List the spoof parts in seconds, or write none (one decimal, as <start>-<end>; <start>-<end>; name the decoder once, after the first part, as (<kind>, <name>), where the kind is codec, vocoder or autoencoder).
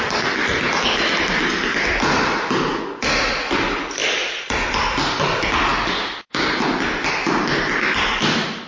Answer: 4.0-5.2 (vocoder, BigVGAN v2)